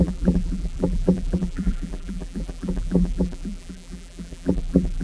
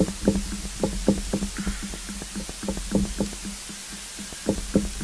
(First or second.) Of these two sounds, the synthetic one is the first